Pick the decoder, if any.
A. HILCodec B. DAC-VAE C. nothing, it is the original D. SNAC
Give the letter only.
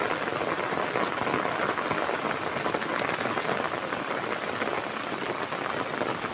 C